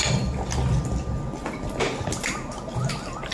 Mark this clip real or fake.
real